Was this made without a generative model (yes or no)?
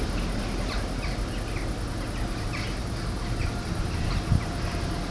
yes